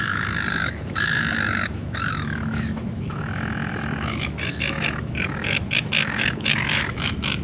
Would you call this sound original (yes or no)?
no